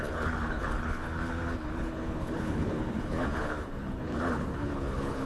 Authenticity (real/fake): fake